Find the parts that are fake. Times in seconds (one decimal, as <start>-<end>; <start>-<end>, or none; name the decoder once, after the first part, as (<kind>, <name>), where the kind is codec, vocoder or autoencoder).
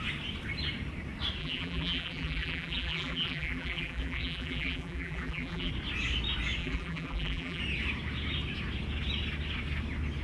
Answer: 1.4-5.7 (vocoder, BigVGAN v2); 6.6-7.6